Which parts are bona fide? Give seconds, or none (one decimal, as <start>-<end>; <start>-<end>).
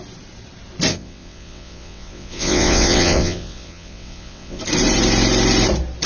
0.0-0.9; 4.6-6.1